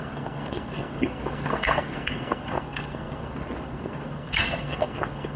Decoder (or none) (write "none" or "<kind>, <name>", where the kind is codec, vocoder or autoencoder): codec, SNAC